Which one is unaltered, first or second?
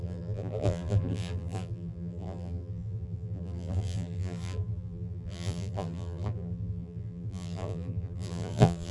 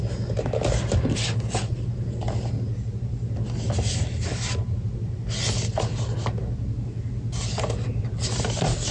second